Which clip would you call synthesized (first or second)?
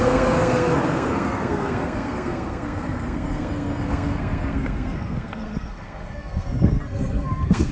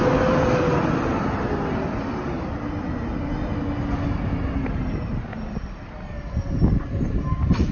first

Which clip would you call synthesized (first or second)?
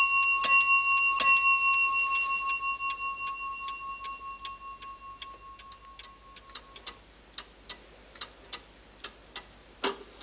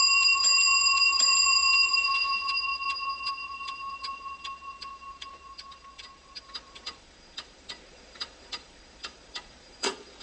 second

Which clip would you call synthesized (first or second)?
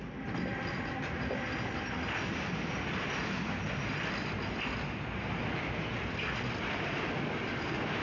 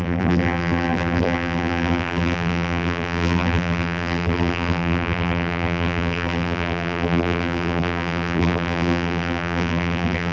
second